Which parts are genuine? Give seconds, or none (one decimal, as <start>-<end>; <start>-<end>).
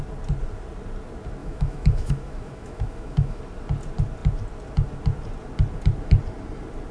0.0-1.4; 3.4-6.9